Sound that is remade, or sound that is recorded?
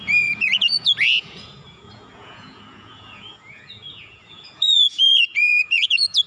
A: remade